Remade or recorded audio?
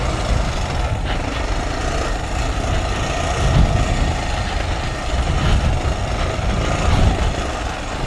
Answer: recorded